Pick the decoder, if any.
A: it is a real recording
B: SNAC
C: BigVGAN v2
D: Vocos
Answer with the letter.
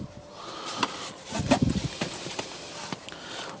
A